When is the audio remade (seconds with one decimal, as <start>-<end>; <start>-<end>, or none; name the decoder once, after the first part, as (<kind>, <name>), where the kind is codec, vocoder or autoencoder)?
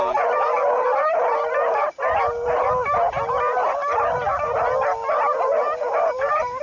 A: none